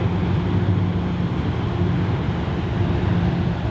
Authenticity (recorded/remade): recorded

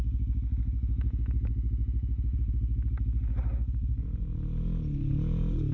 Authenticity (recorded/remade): recorded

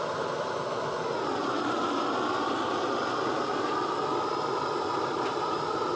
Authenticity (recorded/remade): recorded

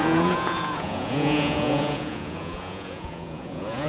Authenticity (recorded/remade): remade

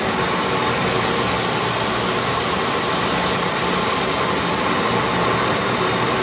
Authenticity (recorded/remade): recorded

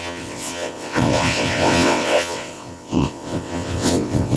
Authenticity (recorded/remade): remade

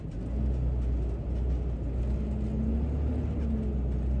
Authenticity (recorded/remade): recorded